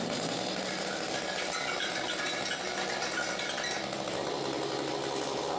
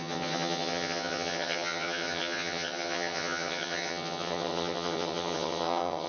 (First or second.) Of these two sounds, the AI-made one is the second